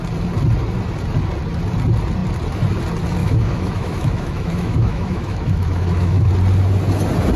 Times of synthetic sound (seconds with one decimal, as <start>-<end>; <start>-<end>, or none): 3.2-6.3